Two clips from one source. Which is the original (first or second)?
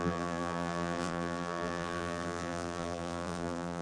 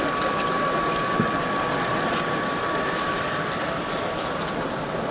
second